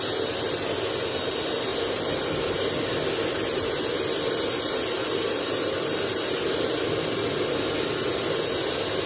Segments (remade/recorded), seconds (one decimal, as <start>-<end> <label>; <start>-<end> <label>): 0.0-9.1 recorded